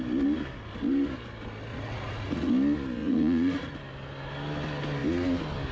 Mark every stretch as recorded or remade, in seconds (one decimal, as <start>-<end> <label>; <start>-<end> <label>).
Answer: 0.0-1.7 recorded; 1.7-2.5 remade; 2.5-3.0 recorded; 3.0-3.7 remade; 3.7-5.7 recorded